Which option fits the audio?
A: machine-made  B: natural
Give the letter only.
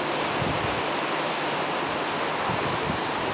B